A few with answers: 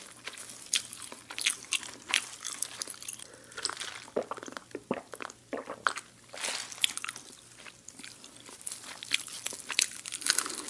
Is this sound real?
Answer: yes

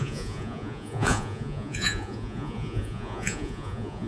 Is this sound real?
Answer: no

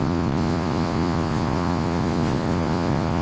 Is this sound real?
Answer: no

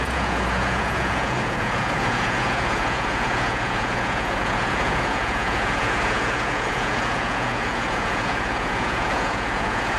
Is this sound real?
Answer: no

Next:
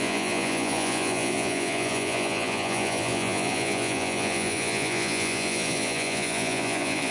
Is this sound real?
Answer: no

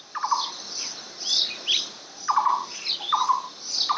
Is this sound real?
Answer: yes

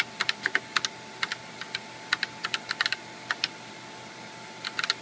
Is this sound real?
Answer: yes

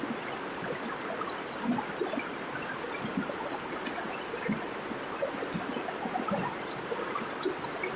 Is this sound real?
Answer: yes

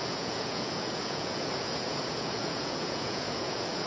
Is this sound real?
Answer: no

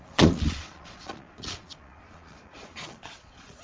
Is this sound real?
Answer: no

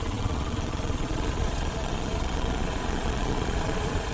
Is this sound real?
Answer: no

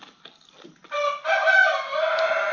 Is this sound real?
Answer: yes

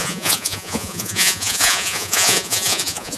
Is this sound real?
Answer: no